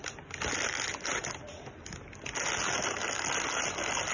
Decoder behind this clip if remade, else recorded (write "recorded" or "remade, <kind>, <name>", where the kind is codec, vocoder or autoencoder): recorded